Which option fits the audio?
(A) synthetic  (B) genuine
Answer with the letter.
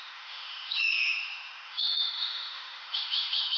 A